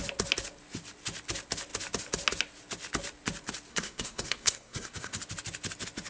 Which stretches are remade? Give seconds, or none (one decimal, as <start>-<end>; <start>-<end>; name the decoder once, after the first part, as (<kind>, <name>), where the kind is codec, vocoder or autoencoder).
3.7-5.2 (codec, SNAC)